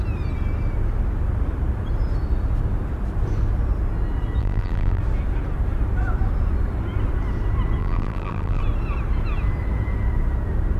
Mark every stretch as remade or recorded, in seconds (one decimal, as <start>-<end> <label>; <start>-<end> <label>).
0.0-4.4 recorded; 4.4-5.0 remade; 5.0-7.8 recorded; 7.8-8.6 remade; 8.6-10.8 recorded